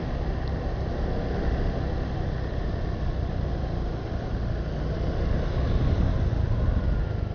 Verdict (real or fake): real